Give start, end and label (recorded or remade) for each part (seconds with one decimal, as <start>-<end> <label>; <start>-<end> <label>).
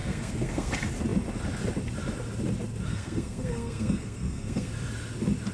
0.0-0.7 remade; 0.7-2.9 recorded; 2.9-4.7 remade; 4.7-5.5 recorded